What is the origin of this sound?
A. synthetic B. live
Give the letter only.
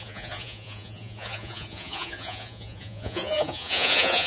A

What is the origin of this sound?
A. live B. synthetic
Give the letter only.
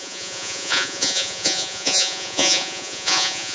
B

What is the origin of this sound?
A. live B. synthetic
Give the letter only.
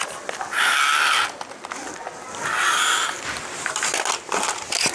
A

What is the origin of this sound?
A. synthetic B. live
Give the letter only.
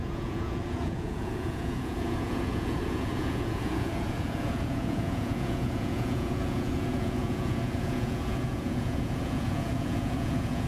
A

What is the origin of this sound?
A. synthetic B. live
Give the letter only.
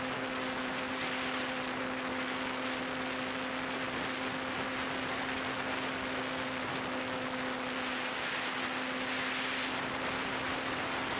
B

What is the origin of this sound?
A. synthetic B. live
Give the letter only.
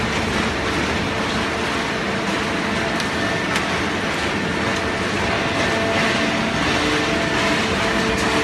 B